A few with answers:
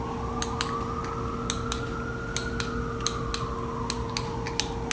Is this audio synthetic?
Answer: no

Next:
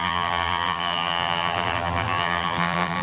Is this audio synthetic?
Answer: yes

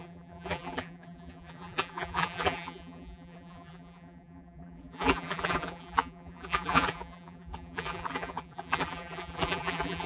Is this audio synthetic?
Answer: yes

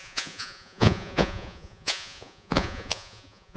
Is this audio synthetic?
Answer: yes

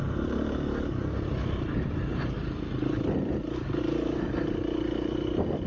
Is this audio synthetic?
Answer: no